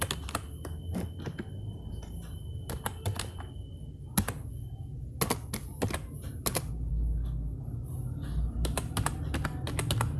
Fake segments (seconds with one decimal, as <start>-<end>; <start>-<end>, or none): 6.9-7.6